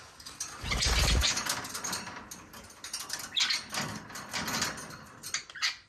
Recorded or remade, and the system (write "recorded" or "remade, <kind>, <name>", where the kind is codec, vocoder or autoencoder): recorded